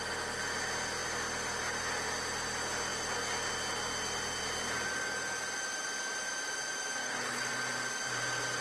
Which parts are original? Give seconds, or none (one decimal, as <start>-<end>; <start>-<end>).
0.0-7.0; 7.5-8.6

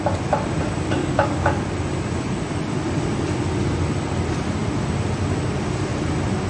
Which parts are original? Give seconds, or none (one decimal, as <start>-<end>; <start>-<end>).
0.0-1.0; 1.7-6.5

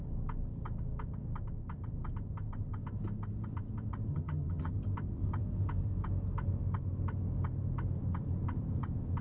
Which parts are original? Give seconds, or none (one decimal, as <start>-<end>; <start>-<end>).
0.0-4.1; 4.7-9.2

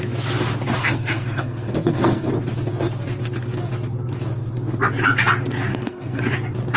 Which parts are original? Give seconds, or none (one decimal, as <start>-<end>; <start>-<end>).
0.0-0.8; 2.3-5.7; 6.2-6.8